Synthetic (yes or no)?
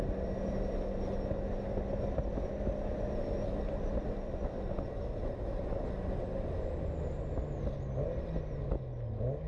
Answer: no